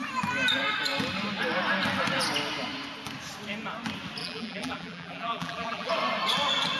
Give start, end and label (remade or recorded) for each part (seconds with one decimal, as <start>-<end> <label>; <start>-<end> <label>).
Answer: 0.0-4.2 recorded; 4.2-5.9 remade; 5.9-6.8 recorded